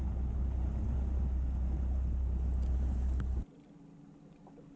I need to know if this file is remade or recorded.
recorded